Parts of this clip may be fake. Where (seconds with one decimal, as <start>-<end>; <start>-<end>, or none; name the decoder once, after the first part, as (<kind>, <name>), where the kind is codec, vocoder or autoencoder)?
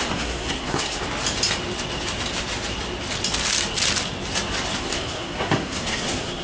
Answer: 0.0-1.0 (codec, SNAC); 4.8-6.4